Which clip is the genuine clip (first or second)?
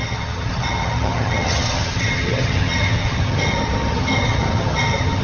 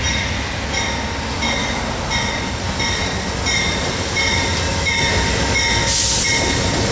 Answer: second